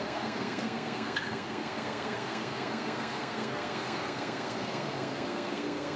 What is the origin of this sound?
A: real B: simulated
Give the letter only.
B